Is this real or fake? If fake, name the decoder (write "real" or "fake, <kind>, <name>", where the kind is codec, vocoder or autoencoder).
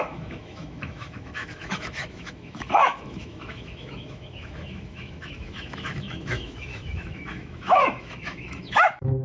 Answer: fake, autoencoder, DAC-VAE